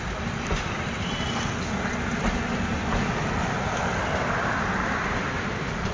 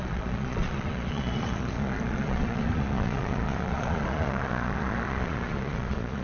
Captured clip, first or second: first